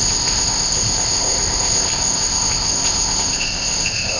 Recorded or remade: remade